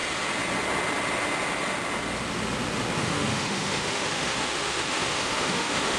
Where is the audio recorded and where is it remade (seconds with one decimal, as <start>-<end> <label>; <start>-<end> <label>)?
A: 0.0-3.0 recorded; 3.0-6.0 remade